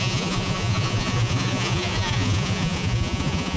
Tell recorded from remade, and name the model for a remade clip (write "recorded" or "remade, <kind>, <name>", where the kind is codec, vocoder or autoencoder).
remade, vocoder, Vocos